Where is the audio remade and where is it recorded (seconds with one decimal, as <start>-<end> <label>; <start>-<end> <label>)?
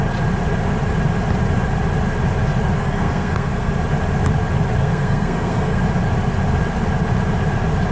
0.0-2.8 recorded; 2.8-3.7 remade; 3.7-4.8 recorded; 4.8-5.8 remade; 5.8-7.9 recorded